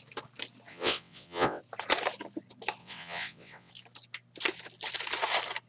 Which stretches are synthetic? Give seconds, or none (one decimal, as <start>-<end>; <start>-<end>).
0.7-1.6; 2.8-3.7